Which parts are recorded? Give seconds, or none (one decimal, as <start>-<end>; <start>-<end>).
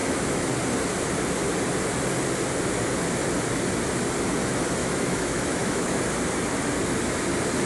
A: 0.5-4.8; 6.0-7.7